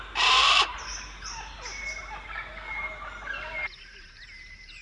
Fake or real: fake